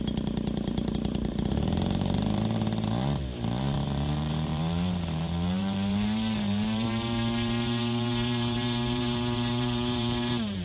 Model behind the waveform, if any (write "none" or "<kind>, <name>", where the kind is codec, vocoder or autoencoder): vocoder, BigVGAN v2